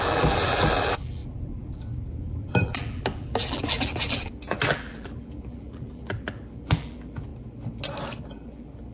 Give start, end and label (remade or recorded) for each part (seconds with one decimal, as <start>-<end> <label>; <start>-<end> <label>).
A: 0.0-7.3 remade; 7.3-8.2 recorded; 8.2-8.9 remade